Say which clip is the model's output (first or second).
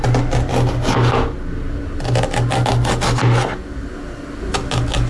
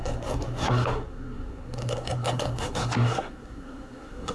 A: second